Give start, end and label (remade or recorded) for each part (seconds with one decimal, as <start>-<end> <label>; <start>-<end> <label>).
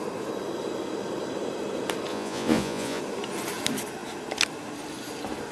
0.0-2.1 recorded; 2.1-3.0 remade; 3.0-5.5 recorded